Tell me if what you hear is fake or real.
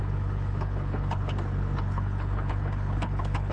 fake